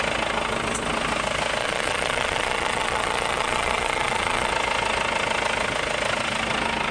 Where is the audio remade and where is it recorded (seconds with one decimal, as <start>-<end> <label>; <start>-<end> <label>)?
0.0-1.6 recorded; 1.6-4.5 remade; 4.5-6.9 recorded

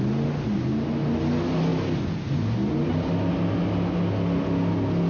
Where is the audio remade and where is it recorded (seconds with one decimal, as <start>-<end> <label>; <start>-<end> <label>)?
0.0-5.1 recorded

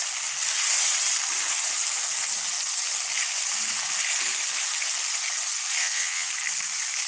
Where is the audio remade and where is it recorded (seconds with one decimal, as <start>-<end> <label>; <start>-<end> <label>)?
0.0-5.8 recorded; 5.8-6.3 remade; 6.3-7.1 recorded

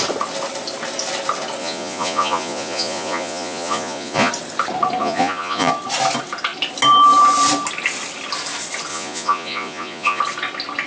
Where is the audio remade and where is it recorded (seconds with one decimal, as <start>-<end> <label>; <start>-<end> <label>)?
0.0-1.6 recorded; 1.6-4.3 remade; 4.3-5.0 recorded; 5.0-5.7 remade; 5.7-8.9 recorded; 8.9-10.2 remade; 10.2-10.9 recorded

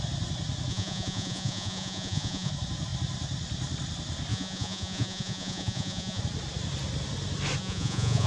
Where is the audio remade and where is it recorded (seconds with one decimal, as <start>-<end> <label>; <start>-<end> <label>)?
0.0-0.7 recorded; 0.7-2.5 remade; 2.5-4.3 recorded; 4.3-6.2 remade; 6.2-7.6 recorded; 7.6-8.3 remade